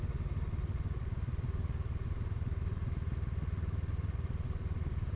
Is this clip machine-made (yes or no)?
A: no